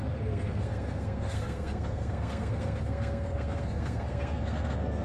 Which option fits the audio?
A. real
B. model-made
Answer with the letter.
B